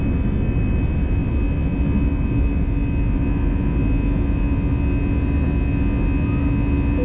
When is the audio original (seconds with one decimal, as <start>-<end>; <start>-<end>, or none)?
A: 0.0-7.0